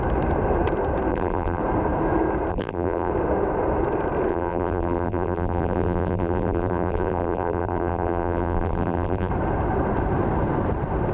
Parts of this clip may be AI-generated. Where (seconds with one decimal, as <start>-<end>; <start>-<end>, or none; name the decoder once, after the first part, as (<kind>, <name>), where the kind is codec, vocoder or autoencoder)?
1.1-1.6 (vocoder, BigVGAN v2); 2.5-3.1; 4.3-9.3